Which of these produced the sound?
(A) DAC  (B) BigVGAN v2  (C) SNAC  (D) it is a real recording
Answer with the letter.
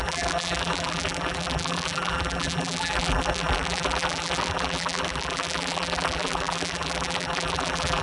B